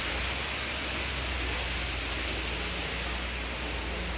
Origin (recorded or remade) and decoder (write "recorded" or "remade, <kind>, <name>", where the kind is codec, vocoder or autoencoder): recorded